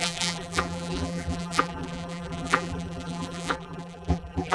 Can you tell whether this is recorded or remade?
remade